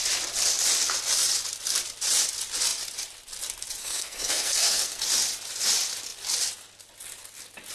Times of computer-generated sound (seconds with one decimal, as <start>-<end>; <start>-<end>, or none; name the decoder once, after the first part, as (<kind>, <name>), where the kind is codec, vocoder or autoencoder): 3.8-5.0 (codec, SNAC)